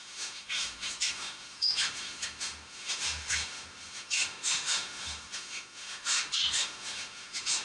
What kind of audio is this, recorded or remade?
remade